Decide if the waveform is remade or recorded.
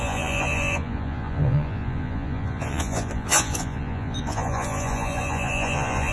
remade